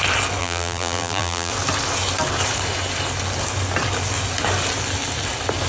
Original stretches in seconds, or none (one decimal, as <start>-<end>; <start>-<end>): 0.0-0.4; 1.5-5.7